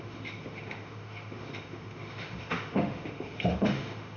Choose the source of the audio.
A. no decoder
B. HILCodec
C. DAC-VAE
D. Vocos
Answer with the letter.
C